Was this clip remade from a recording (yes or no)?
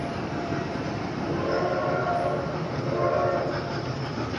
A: yes